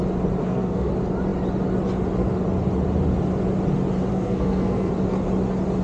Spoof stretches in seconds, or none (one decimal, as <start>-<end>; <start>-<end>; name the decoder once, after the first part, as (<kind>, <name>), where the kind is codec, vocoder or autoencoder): 0.4-0.9 (codec, SNAC); 4.1-4.9